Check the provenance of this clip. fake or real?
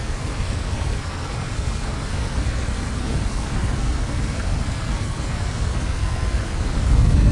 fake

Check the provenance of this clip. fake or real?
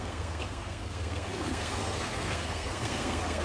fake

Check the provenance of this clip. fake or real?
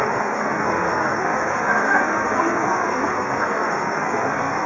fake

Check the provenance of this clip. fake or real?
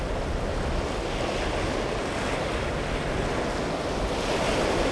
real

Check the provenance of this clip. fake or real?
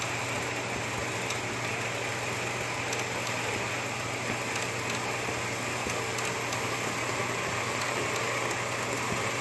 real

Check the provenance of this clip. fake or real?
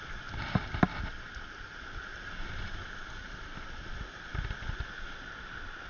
real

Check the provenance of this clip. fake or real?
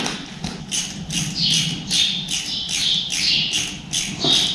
real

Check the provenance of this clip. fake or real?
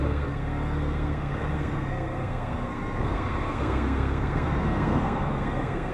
fake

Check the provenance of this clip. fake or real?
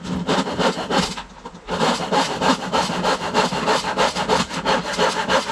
real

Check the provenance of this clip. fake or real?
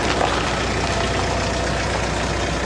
real